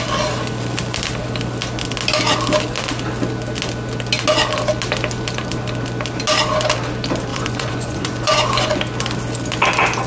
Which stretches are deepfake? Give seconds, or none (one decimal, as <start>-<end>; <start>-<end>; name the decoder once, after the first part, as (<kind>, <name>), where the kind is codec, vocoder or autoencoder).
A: 7.3-8.8 (vocoder, Vocos)